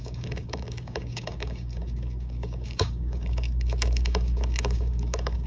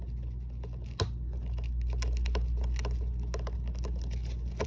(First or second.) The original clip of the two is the second